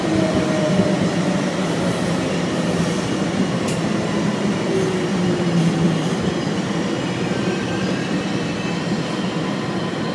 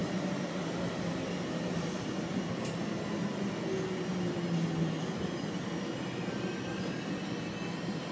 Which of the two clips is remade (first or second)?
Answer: first